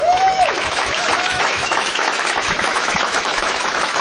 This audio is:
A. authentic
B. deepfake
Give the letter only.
B